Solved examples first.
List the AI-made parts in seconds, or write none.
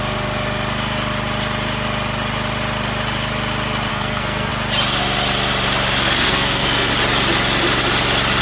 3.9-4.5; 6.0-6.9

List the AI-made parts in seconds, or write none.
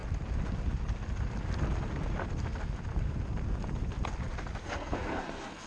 4.6-5.7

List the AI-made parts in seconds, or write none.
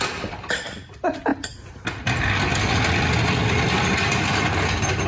none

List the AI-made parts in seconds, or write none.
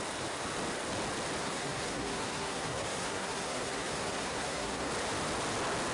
1.4-4.9